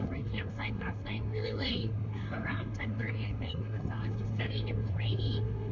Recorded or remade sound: remade